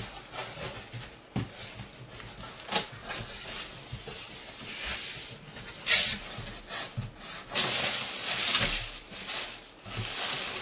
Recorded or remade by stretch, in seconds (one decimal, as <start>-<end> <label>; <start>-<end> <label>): 0.0-10.6 recorded